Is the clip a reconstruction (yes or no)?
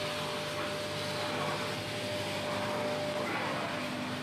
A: no